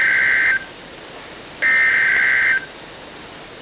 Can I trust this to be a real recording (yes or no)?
yes